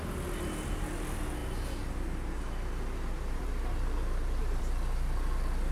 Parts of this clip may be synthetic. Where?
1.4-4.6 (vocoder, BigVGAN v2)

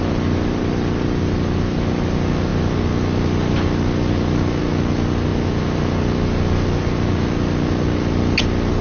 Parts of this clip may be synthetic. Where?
none

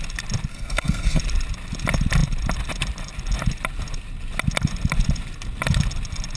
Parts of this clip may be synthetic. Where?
0.5-1.2 (codec, SNAC)

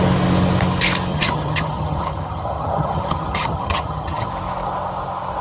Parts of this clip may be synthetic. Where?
1.1-4.3 (vocoder, HiFi-GAN)